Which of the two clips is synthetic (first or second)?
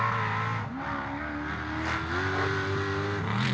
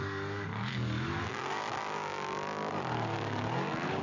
second